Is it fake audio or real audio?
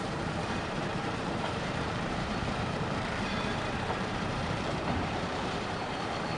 fake